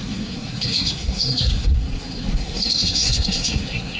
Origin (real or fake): fake